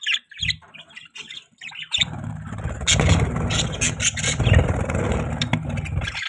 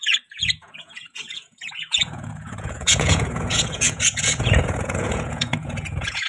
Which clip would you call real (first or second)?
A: first